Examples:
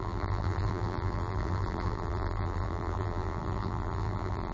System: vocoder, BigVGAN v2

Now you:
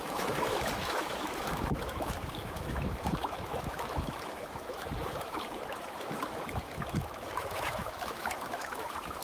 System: autoencoder, DAC-VAE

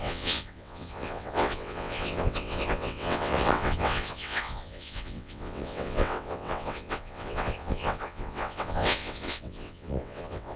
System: vocoder, WaveNeXt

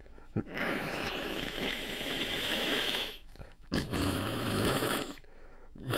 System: autoencoder, DAC-VAE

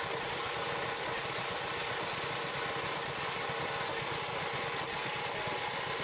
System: none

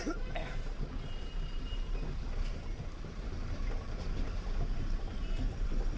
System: vocoder, BigVGAN v2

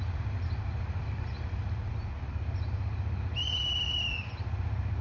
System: none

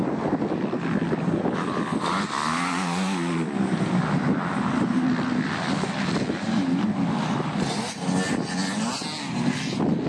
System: none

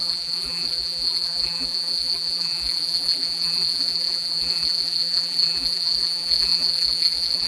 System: vocoder, BigVGAN v2